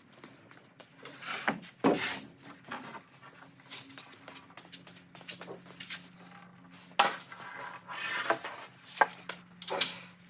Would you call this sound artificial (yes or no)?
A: no